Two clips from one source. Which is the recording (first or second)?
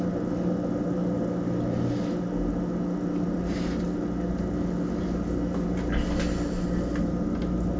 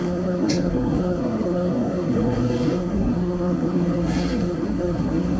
first